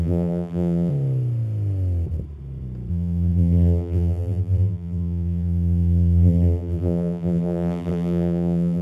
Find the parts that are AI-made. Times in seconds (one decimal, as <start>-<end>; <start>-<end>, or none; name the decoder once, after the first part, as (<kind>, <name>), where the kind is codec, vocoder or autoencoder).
0.0-0.9 (vocoder, BigVGAN v2); 2.9-8.8